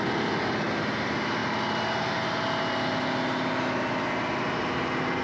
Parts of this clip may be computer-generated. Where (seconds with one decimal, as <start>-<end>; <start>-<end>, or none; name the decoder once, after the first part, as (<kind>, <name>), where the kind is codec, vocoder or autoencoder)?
none